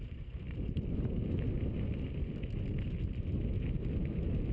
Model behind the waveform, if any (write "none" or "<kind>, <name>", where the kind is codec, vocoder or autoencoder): none